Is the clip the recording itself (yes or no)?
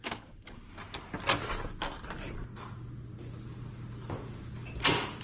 yes